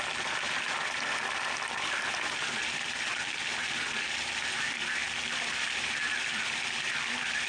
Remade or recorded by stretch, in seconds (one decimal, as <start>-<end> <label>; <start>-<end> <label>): 0.0-7.5 recorded

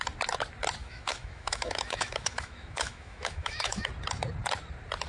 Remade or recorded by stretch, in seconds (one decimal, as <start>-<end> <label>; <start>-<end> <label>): 0.0-0.8 recorded; 0.8-3.9 remade; 3.9-5.1 recorded